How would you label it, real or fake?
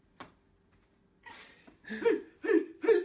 real